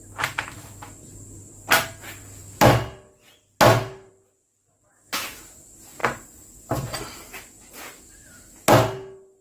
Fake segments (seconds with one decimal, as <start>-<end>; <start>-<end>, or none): 4.9-5.4